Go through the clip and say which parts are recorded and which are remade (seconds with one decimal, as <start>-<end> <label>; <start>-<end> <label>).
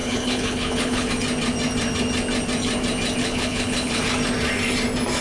0.0-1.1 remade; 1.1-3.2 recorded; 3.2-4.0 remade; 4.0-5.2 recorded